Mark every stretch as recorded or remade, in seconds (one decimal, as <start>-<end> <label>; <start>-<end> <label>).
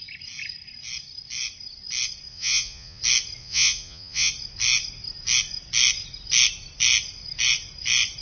0.0-2.3 recorded; 2.3-3.0 remade; 3.0-3.4 recorded; 3.4-4.3 remade; 4.3-8.2 recorded